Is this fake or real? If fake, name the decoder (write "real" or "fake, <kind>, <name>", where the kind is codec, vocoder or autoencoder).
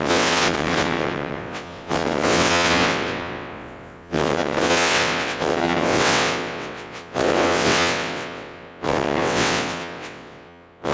fake, vocoder, WaveNeXt